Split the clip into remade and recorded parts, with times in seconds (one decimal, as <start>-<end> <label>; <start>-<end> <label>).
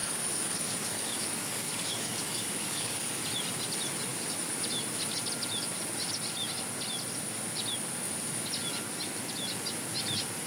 0.0-3.2 remade; 3.2-10.5 recorded